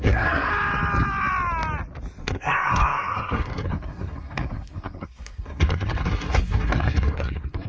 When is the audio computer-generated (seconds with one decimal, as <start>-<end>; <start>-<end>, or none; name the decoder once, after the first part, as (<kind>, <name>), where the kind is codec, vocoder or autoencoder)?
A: 0.0-0.5 (codec, SNAC); 2.2-7.7